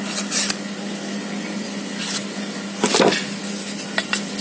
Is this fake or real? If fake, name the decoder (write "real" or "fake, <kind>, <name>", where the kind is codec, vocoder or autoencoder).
real